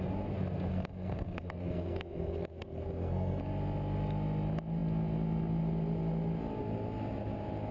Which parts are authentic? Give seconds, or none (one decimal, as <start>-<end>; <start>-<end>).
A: 0.0-0.7; 3.4-7.7